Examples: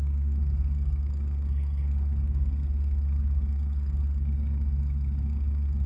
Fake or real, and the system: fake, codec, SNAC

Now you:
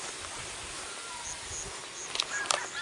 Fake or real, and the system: real